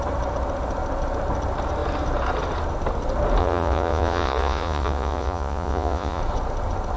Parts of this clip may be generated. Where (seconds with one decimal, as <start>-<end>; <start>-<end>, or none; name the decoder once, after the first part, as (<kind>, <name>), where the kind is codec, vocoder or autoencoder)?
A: 3.4-6.2 (vocoder, Vocos)